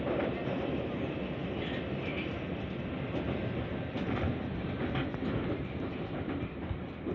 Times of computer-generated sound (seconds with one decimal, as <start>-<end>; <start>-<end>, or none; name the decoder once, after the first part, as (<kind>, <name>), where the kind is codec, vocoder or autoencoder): none

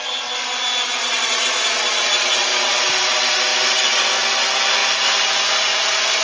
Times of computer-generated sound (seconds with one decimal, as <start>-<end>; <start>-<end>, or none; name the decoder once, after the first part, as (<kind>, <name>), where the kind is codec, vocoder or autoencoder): 2.5-3.1 (vocoder, BigVGAN v2)

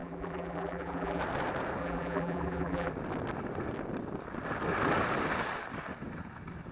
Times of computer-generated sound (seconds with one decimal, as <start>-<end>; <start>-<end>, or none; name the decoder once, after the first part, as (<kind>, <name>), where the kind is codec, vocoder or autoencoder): 0.0-1.2 (vocoder, BigVGAN v2); 1.8-2.9

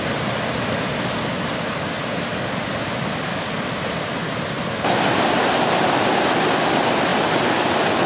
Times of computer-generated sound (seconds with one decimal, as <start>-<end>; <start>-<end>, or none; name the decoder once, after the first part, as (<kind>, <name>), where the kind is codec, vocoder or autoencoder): 7.1-8.1 (vocoder, BigVGAN v2)

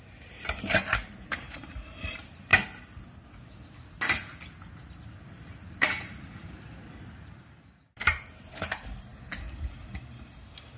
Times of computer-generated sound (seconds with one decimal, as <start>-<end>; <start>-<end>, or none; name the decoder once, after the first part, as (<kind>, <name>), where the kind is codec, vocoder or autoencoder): 0.0-2.5 (vocoder, BigVGAN v2); 5.7-10.8

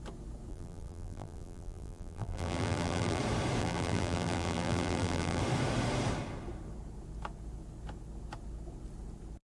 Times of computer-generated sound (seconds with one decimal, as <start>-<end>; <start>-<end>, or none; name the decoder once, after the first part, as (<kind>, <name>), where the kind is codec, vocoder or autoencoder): 0.5-3.2 (vocoder, BigVGAN v2); 3.6-5.4

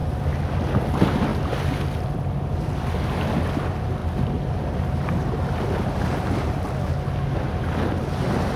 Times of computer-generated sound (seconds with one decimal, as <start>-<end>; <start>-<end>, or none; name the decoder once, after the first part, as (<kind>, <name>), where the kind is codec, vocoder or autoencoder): none